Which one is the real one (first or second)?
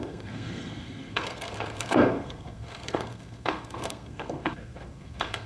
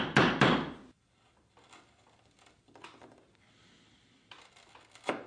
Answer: second